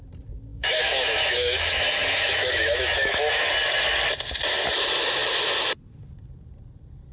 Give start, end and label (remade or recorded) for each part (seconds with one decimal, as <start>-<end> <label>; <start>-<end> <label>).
0.0-0.5 recorded; 0.5-3.5 remade; 3.5-7.1 recorded